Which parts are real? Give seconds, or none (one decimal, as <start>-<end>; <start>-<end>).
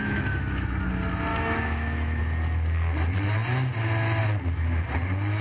0.7-1.3; 2.2-5.4